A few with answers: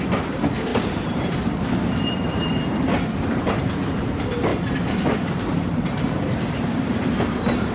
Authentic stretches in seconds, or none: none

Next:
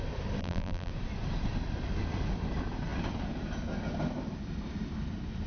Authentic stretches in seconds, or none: 0.0-0.4; 0.9-5.5

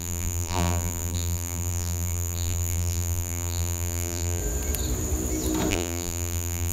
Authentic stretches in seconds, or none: 4.4-5.7